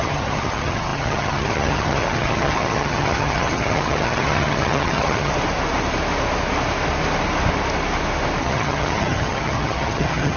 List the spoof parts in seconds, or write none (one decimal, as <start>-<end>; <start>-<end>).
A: 0.0-5.3; 8.4-10.4